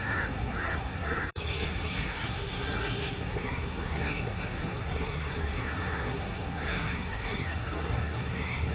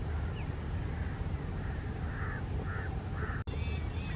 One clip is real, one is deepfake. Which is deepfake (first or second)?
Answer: first